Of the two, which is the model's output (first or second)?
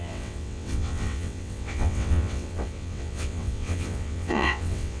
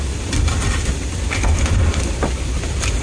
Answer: first